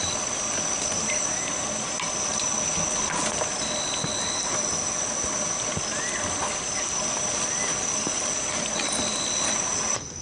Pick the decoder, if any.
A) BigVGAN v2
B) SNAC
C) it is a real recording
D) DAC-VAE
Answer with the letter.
C